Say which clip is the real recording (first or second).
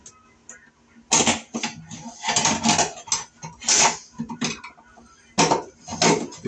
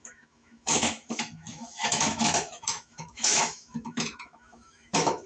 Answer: first